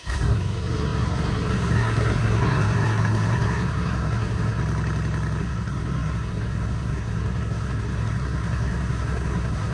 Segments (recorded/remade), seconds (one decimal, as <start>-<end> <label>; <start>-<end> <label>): 0.0-4.6 remade; 4.6-5.4 recorded; 5.4-9.7 remade